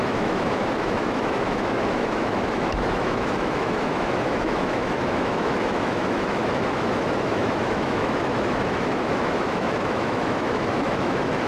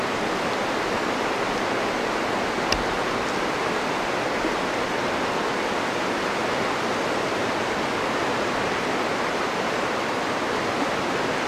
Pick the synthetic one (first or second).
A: first